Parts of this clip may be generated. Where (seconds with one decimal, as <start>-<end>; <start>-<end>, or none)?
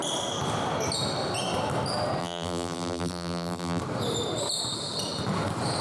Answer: 2.2-3.8